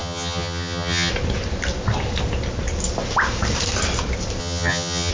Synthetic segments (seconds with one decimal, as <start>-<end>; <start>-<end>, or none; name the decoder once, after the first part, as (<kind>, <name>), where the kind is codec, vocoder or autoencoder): 0.0-1.1 (vocoder, HiFi-GAN); 4.4-5.1